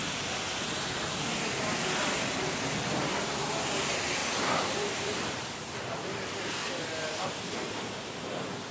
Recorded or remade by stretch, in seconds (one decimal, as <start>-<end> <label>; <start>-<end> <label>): 0.0-4.2 recorded; 4.2-5.8 remade; 5.8-8.7 recorded